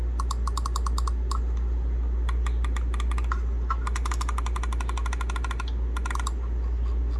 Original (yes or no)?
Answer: yes